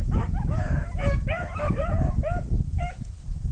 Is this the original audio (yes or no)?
no